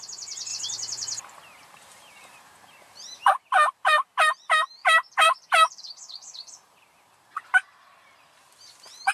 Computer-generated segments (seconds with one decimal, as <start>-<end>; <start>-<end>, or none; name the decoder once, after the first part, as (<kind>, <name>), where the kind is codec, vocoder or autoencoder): 0.5-3.3 (vocoder, BigVGAN v2); 4.8-8.2